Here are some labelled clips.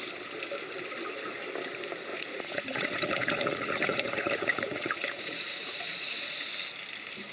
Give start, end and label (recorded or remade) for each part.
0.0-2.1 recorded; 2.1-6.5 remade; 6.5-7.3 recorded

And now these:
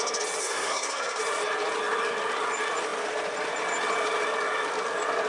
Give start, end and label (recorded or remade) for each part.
0.0-0.4 recorded; 0.4-1.2 remade; 1.2-5.3 recorded